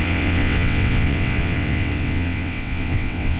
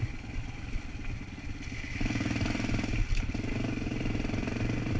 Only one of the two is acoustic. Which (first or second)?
second